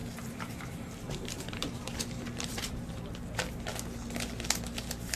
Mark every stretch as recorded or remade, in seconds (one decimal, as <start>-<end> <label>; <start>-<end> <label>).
0.0-3.1 remade; 3.1-5.2 recorded